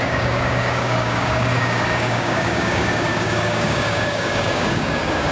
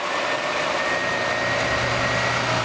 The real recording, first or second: second